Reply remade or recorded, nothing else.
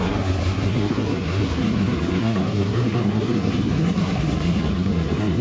remade